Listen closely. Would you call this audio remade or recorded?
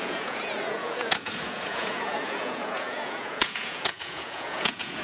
remade